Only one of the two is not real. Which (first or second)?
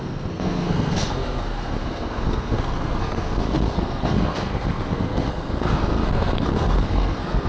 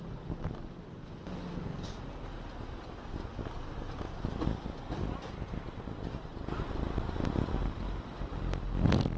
first